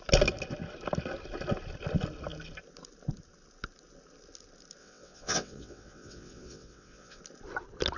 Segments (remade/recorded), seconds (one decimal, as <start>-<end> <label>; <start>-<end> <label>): 0.0-4.8 recorded; 4.8-7.2 remade; 7.2-8.0 recorded